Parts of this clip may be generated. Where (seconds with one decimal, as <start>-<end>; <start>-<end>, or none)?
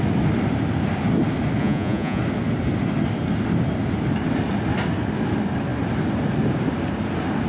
1.6-2.2